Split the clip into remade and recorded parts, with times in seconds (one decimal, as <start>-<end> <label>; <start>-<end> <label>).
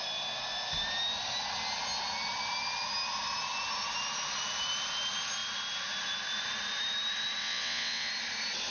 0.0-7.4 recorded; 7.4-8.1 remade; 8.1-8.7 recorded